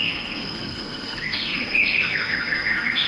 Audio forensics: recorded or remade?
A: remade